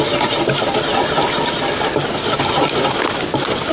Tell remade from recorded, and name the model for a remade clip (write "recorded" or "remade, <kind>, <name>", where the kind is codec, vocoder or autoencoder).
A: recorded